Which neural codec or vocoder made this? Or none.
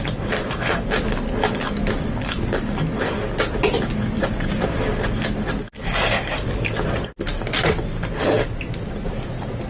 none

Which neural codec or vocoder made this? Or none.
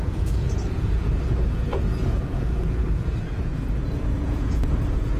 vocoder, Vocos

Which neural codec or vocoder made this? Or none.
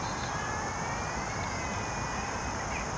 none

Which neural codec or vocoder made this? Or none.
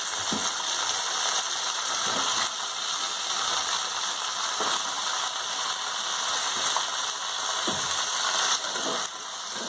none